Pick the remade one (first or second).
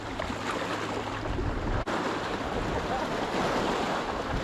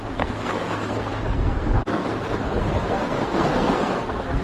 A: second